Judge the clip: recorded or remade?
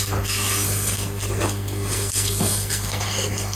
remade